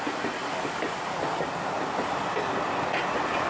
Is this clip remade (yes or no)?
no